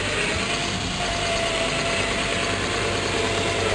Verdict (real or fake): real